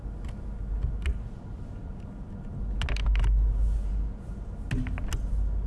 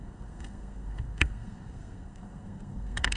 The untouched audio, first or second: first